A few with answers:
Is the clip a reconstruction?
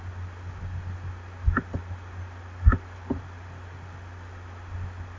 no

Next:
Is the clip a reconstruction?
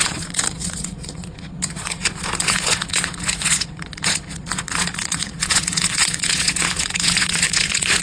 yes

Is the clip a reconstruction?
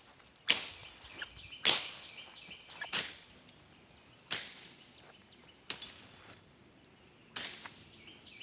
no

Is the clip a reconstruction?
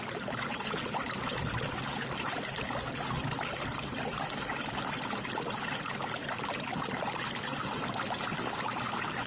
no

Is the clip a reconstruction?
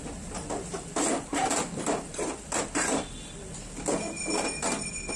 no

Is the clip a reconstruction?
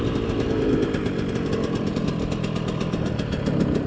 no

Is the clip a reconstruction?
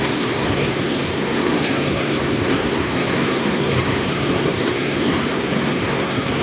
yes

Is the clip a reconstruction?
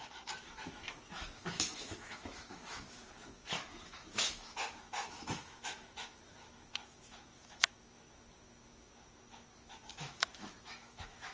yes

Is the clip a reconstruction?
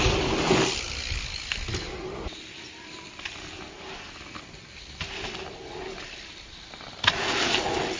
no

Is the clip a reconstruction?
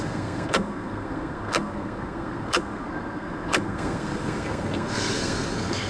yes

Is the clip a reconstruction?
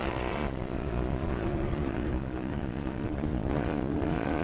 yes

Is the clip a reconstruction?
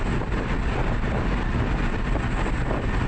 no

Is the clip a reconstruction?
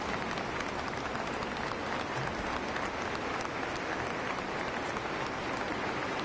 no